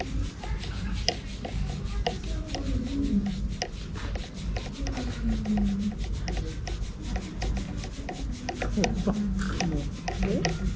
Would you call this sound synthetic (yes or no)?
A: no